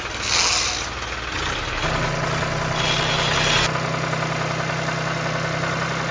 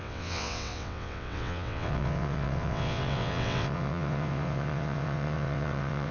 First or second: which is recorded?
first